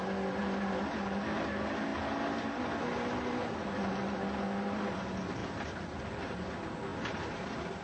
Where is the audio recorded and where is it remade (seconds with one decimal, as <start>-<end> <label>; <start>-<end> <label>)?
0.0-7.8 recorded